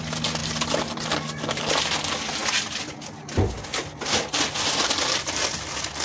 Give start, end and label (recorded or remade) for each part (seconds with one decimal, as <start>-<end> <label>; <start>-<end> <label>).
0.0-6.0 recorded